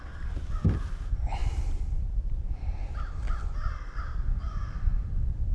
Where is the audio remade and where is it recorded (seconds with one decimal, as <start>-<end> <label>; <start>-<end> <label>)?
0.0-5.5 recorded